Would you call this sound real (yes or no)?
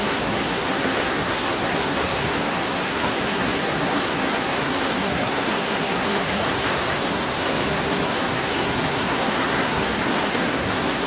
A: no